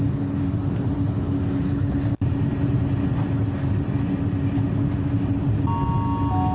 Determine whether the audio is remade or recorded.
recorded